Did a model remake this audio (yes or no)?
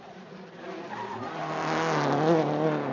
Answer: no